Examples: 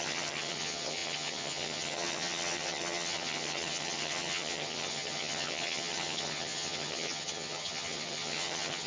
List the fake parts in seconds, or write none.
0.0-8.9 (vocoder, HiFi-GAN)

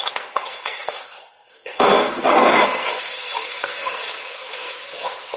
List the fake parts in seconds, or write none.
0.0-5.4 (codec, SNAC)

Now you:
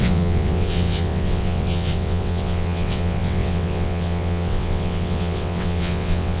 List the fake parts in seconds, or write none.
0.0-6.4 (vocoder, WaveNeXt)

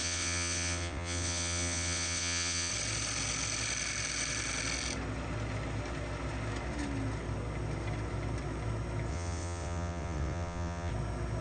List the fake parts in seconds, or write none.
0.0-2.7 (vocoder, WaveNeXt); 9.1-10.9

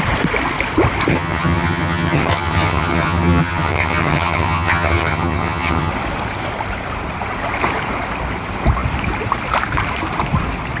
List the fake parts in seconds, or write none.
1.1-5.9 (vocoder, HiFi-GAN)